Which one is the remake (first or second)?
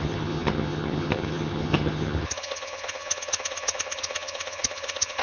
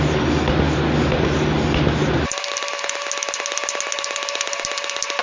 first